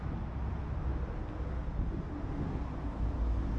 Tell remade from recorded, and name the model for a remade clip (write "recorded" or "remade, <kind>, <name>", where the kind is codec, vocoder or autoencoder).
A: recorded